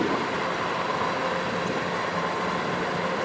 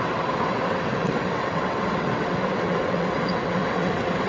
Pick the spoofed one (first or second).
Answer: second